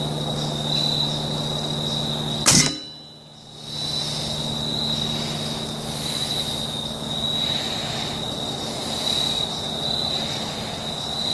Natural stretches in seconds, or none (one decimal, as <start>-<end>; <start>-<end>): 0.0-11.3